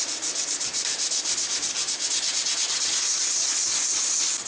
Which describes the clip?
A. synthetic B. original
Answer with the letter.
B